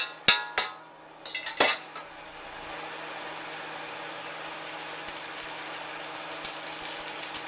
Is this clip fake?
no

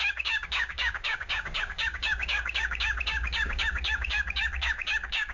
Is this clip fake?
yes